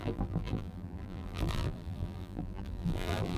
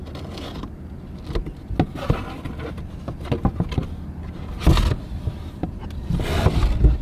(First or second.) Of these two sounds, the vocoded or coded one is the first